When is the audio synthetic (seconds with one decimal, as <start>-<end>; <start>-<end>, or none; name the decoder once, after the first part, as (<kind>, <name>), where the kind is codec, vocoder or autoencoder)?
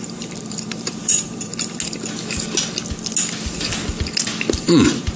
0.0-1.5 (vocoder, BigVGAN v2); 4.5-5.2